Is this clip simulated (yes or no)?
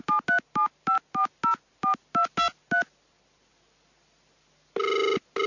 no